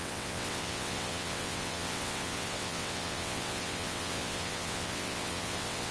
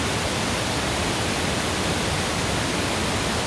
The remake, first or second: first